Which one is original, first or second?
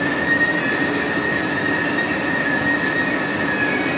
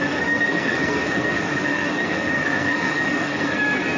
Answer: first